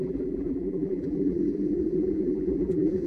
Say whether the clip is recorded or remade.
remade